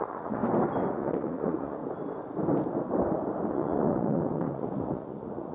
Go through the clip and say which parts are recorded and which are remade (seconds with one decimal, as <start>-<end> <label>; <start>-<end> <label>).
0.0-0.4 remade; 0.4-0.9 recorded; 0.9-1.8 remade; 1.8-3.5 recorded; 3.5-5.5 remade